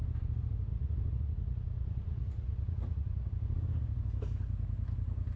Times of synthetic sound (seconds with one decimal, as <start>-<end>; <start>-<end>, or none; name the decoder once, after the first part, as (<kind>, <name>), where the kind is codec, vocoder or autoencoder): 0.7-3.3 (vocoder, Vocos)